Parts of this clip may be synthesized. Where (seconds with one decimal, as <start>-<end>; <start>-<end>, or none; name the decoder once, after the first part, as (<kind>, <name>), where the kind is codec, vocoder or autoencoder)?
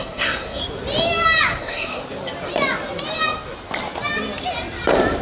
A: 0.0-0.6 (codec, SNAC); 1.6-2.0